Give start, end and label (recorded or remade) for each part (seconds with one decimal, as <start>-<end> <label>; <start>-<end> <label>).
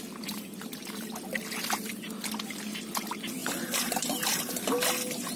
0.0-3.4 recorded; 3.4-4.6 remade; 4.6-5.4 recorded